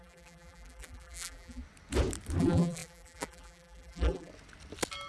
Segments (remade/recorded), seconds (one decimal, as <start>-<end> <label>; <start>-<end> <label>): 0.0-1.6 remade; 1.6-2.4 recorded; 2.4-4.3 remade; 4.3-5.1 recorded